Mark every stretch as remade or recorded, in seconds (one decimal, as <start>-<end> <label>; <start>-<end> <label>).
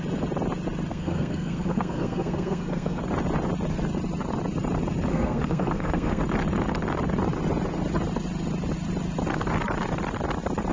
0.0-0.9 recorded; 0.9-3.0 remade; 3.0-5.1 recorded; 5.1-6.2 remade; 6.2-10.7 recorded